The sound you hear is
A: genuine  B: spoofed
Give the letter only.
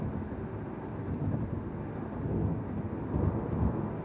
A